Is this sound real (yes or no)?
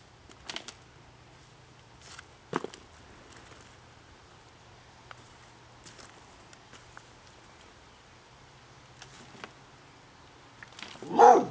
yes